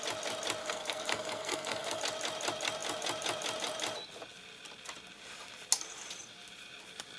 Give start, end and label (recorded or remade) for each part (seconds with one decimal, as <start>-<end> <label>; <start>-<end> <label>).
0.0-0.6 recorded; 0.6-2.0 remade; 2.0-7.2 recorded